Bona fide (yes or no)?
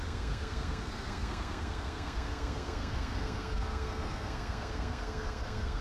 no